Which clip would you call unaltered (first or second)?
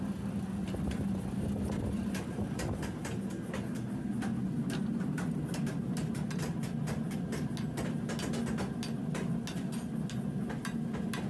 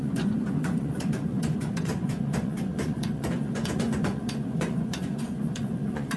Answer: first